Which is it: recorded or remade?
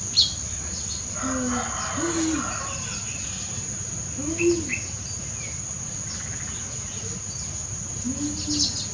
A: recorded